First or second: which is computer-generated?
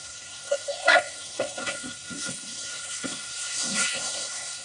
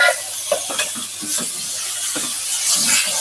first